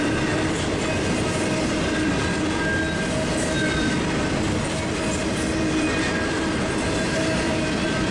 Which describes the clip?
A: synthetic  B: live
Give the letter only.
B